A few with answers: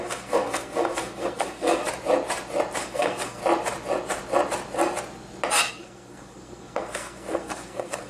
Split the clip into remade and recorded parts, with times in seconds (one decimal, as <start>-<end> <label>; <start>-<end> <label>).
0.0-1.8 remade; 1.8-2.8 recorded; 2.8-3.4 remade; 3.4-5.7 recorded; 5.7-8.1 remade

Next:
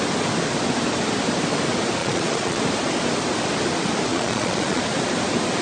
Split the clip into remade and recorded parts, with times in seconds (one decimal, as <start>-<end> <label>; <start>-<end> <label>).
0.0-2.0 recorded; 2.0-2.6 remade; 2.6-4.1 recorded; 4.1-4.8 remade; 4.8-5.6 recorded

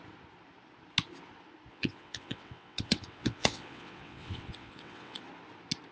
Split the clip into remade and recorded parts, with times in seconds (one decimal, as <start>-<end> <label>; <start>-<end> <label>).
0.0-1.7 recorded; 1.7-5.2 remade; 5.2-5.9 recorded

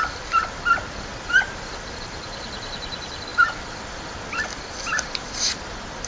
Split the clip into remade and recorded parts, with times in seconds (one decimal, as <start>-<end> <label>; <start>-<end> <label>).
0.0-1.1 remade; 1.1-1.7 recorded; 1.7-6.1 remade